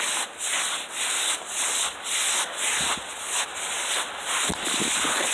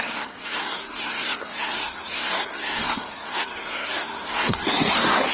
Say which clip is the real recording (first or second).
first